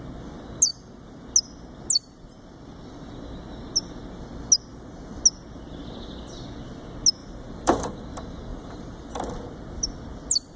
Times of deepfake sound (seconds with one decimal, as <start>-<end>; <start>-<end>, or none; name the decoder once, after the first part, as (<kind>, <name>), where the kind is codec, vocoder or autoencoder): 4.7-5.2 (vocoder, BigVGAN v2); 7.2-8.0; 8.5-9.1